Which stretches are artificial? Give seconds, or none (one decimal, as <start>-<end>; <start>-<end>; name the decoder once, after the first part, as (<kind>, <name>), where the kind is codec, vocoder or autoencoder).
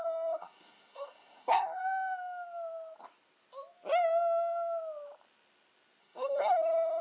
0.0-1.8 (codec, SNAC); 6.0-7.0